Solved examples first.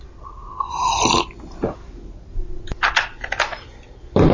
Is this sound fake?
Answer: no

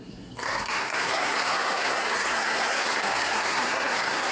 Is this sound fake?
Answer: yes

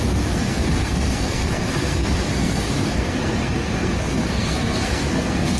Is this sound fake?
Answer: yes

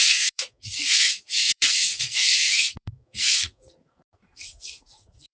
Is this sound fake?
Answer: yes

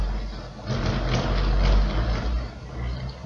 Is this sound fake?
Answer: no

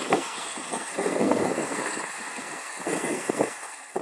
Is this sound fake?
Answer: yes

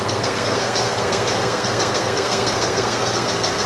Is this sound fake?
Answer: yes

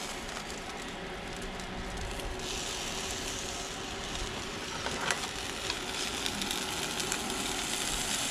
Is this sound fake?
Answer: no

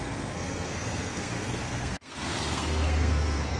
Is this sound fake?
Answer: yes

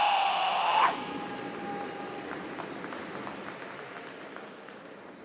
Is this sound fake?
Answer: no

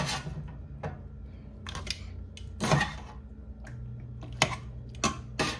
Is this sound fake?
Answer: no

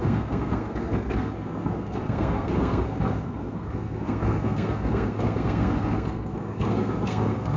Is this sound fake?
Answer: yes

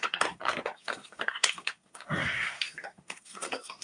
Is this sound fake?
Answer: yes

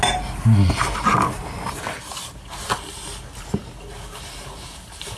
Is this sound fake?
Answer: no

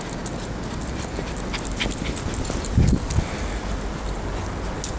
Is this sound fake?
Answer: no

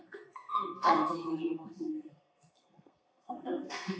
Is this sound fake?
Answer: yes